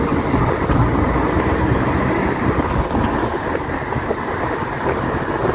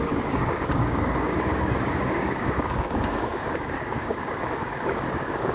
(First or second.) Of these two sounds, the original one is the first